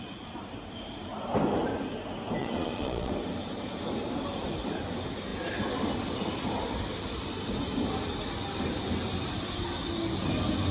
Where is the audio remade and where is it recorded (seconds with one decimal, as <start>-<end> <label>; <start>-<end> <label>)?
0.0-2.4 recorded; 2.4-3.1 remade; 3.1-10.7 recorded